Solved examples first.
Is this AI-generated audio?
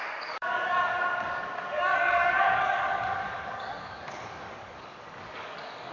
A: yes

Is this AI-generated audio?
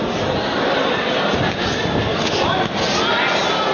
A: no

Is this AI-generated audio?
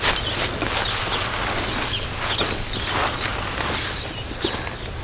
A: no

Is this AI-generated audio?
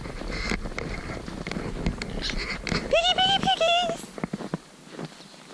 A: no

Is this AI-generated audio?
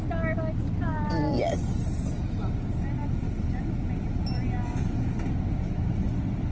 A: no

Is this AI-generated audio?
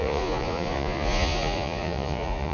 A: yes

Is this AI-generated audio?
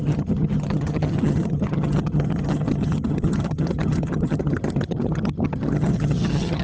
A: yes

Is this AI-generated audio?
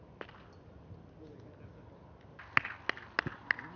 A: no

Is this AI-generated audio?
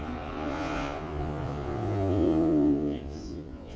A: yes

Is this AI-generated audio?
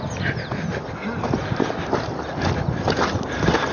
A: no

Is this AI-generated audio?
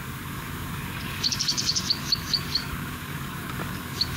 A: yes